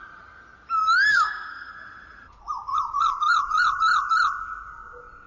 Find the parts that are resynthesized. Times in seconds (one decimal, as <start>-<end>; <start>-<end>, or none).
1.1-1.7